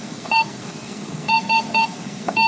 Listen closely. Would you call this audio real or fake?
fake